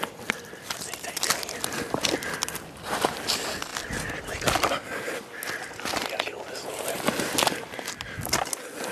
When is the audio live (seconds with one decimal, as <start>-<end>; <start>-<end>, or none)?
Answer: 0.0-8.9